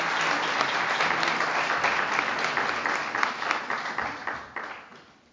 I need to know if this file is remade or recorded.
recorded